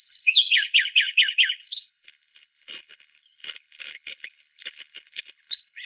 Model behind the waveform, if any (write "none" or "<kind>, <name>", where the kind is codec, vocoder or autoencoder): codec, HILCodec